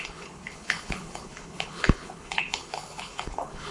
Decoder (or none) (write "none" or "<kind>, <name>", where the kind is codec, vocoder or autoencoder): codec, HILCodec